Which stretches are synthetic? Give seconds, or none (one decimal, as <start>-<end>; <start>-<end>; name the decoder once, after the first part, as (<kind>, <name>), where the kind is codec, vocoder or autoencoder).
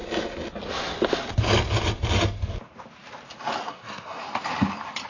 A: 3.6-4.2 (codec, SNAC)